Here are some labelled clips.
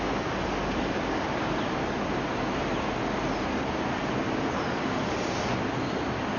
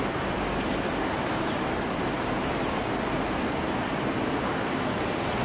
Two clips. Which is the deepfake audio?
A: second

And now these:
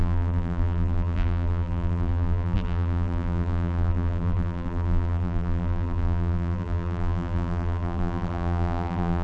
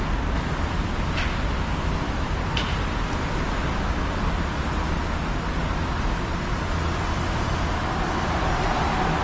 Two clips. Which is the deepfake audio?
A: first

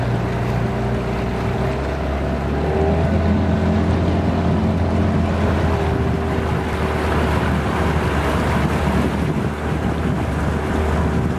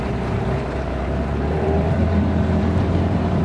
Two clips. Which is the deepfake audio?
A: second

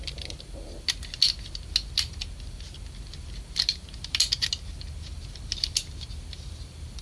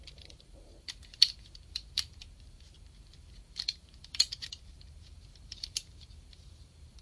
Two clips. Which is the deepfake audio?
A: second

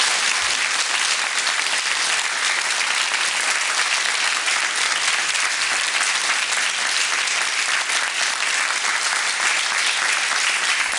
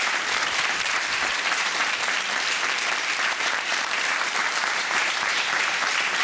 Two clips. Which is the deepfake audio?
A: second